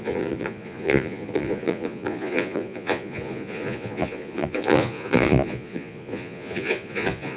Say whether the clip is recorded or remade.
remade